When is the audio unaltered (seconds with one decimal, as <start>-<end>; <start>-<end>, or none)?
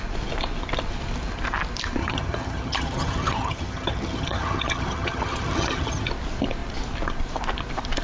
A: 0.0-2.0; 6.1-8.0